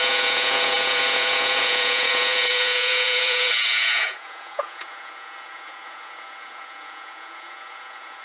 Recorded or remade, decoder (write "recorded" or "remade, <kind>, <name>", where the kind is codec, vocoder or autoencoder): remade, vocoder, Vocos